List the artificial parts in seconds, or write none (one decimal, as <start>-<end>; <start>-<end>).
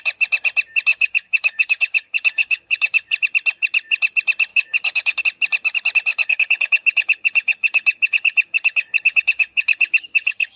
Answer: 0.9-3.1; 4.5-5.2; 6.1-10.6